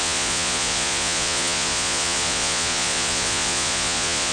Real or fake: fake